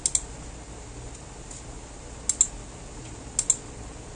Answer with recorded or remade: recorded